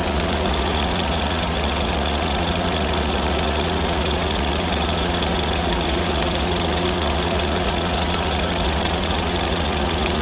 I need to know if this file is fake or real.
fake